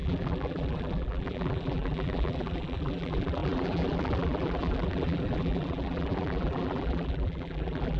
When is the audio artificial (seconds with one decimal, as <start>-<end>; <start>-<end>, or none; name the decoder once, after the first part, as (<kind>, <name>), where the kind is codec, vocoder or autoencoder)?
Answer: 0.0-8.0 (vocoder, BigVGAN v2)